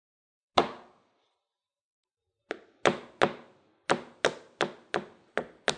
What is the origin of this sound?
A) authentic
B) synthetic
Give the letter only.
A